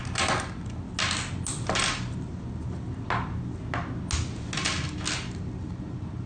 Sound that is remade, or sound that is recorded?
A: recorded